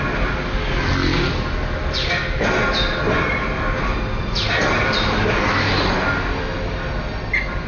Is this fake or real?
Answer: real